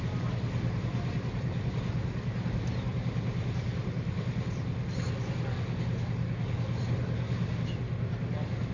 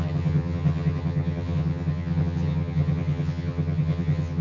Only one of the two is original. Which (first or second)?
first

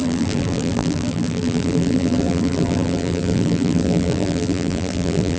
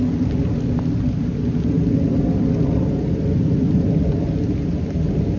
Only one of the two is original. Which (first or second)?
second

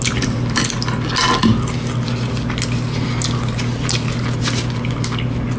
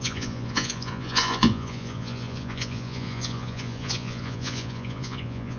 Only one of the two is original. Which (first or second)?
first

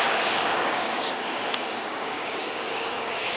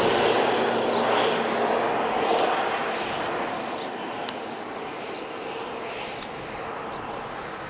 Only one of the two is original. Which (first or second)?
second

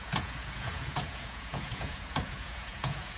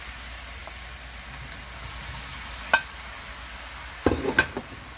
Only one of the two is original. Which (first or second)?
second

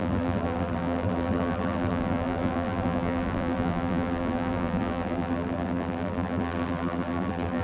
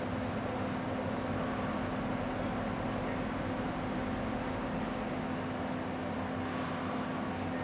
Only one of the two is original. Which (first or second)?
second